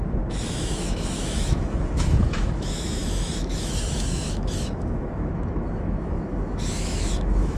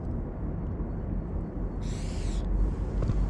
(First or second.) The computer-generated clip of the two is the first